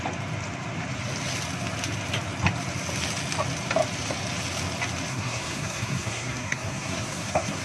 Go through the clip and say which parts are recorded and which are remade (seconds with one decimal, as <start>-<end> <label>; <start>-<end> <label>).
0.0-5.1 recorded; 5.1-7.6 remade